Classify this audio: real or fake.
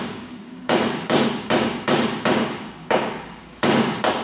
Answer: fake